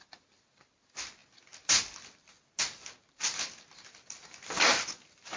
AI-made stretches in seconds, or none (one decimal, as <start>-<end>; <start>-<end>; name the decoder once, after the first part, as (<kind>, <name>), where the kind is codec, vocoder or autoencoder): none